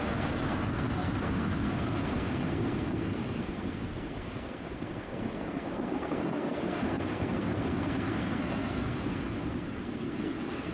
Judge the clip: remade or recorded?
remade